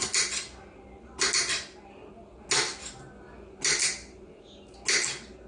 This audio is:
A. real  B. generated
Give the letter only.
A